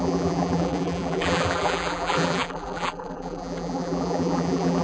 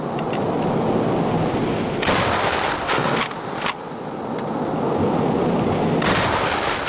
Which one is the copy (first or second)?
first